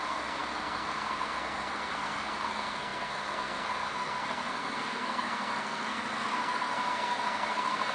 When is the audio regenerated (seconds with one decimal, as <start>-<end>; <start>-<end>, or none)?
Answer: 0.0-7.9